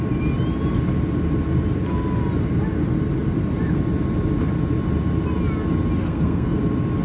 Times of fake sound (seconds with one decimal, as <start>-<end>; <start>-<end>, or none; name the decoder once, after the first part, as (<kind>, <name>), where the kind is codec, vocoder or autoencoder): 6.0-6.6 (codec, SNAC)